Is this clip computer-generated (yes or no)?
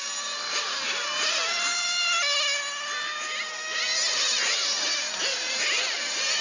no